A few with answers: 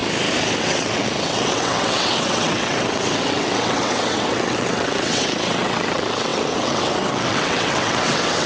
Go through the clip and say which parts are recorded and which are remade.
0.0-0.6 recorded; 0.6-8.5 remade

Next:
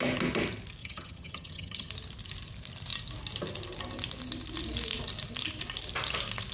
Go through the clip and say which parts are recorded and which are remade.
0.0-0.8 recorded; 0.8-1.9 remade; 1.9-6.5 recorded

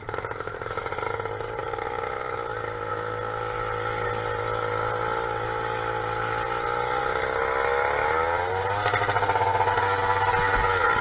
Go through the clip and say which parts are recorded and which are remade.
0.0-11.0 recorded

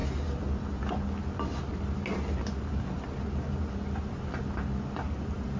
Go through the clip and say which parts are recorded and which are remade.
0.0-5.6 recorded